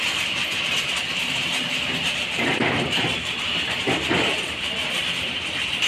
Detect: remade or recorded remade